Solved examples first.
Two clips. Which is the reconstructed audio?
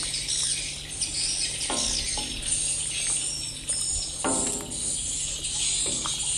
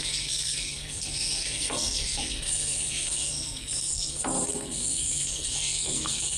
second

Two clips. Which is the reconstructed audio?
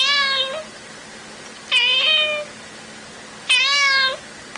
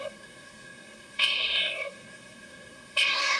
second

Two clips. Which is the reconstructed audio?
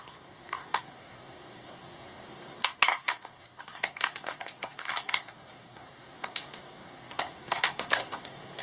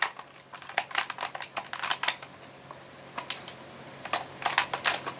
first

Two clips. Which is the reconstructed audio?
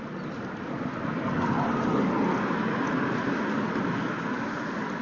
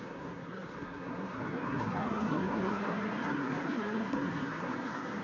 second